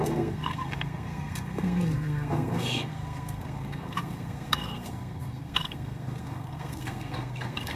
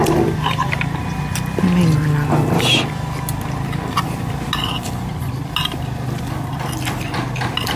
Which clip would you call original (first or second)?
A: second